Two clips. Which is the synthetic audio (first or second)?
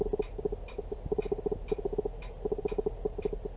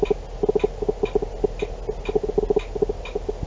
first